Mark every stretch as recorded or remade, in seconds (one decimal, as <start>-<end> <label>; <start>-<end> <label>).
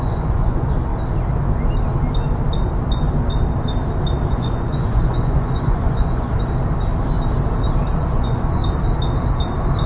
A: 0.0-0.9 remade; 0.9-4.3 recorded; 4.3-6.3 remade; 6.3-8.0 recorded; 8.0-8.6 remade; 8.6-9.9 recorded